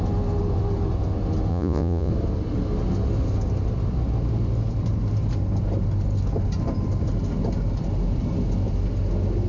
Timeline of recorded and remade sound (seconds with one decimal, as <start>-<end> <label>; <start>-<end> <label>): 0.0-1.5 recorded; 1.5-2.1 remade; 2.1-9.5 recorded